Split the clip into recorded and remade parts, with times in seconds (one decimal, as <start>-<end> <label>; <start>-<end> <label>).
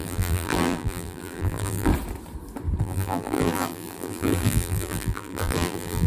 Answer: 0.0-1.9 remade; 1.9-2.8 recorded; 2.8-6.1 remade